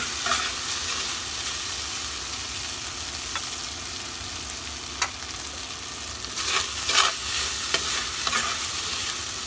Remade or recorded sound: recorded